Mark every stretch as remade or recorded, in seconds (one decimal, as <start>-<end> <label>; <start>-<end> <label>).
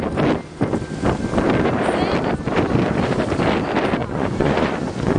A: 0.0-4.0 recorded; 4.0-5.2 remade